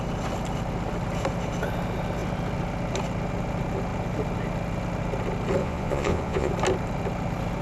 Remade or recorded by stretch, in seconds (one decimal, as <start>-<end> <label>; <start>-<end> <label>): 0.0-5.6 recorded; 5.6-6.5 remade; 6.5-7.6 recorded